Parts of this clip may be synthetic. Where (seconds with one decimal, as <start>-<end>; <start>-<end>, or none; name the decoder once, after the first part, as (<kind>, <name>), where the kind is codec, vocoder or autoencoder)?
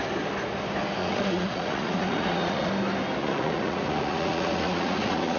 1.0-2.7 (vocoder, Vocos); 3.2-5.4